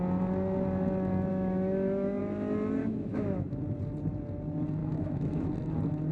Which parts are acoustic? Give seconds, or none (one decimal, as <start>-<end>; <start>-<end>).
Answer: 0.0-1.3; 2.2-2.8; 3.6-4.8; 5.5-6.1